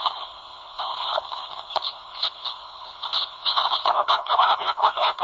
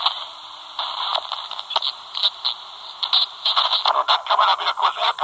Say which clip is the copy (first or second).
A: first